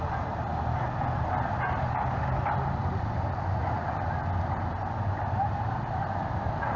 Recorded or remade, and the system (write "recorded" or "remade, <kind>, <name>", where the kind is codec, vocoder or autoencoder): recorded